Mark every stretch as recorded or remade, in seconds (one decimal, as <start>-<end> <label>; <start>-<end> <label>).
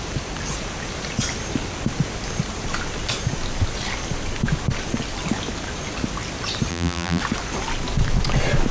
0.0-6.7 recorded; 6.7-7.2 remade; 7.2-8.7 recorded